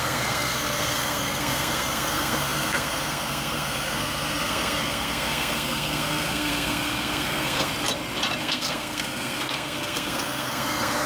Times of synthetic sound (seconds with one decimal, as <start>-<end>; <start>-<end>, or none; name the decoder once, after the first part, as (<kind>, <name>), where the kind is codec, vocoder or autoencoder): 0.0-7.7 (codec, SNAC); 8.4-11.1